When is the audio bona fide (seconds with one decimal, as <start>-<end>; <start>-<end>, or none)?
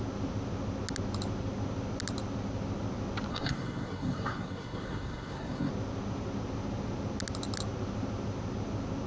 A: 0.0-3.3; 5.7-9.1